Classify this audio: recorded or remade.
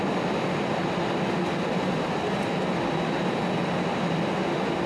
recorded